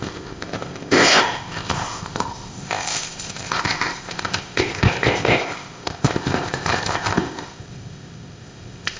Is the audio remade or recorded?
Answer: remade